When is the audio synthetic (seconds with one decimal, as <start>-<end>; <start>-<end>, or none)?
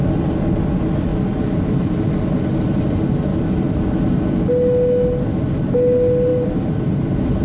1.1-2.0; 3.3-3.9; 6.3-7.4